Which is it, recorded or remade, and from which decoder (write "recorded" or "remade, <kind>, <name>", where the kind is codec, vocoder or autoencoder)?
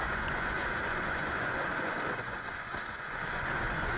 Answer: remade, vocoder, Vocos